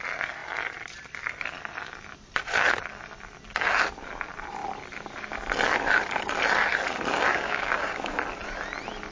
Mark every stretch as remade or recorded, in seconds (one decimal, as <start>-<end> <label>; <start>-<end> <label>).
0.0-7.3 recorded; 7.3-8.2 remade; 8.2-9.1 recorded